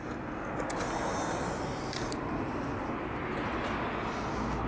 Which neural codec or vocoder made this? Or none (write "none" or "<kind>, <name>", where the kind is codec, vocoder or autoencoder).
none